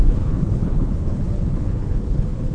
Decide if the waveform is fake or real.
fake